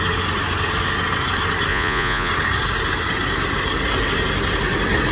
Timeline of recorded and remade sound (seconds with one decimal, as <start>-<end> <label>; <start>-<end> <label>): 0.0-1.7 recorded; 1.7-2.3 remade; 2.3-5.1 recorded